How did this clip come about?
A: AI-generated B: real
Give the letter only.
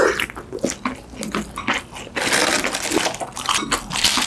B